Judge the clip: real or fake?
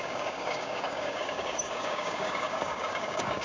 fake